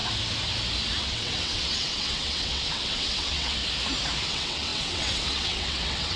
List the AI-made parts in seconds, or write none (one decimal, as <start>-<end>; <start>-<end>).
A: 1.0-3.6; 4.3-6.2